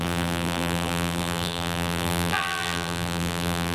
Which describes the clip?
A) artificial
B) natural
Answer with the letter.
A